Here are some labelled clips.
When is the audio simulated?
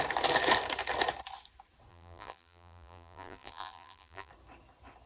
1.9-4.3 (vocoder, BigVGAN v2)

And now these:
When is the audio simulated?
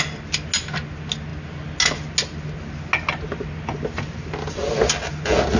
none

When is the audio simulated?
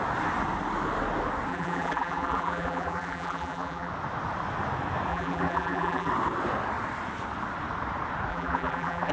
1.5-3.9 (vocoder, BigVGAN v2); 5.1-6.1; 8.3-9.1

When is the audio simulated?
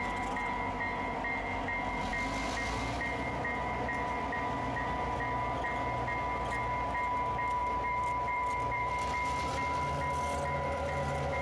7.6-8.9 (vocoder, BigVGAN v2)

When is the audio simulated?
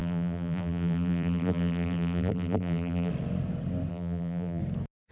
0.0-3.1 (vocoder, BigVGAN v2); 3.9-4.6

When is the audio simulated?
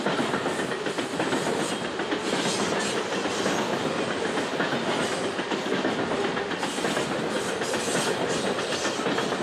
0.0-4.5 (vocoder, BigVGAN v2); 7.5-9.4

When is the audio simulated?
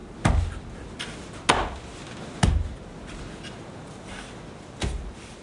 none